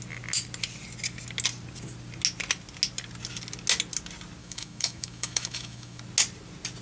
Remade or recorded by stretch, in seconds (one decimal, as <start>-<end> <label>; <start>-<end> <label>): 0.0-4.4 recorded; 4.4-6.0 remade; 6.0-6.8 recorded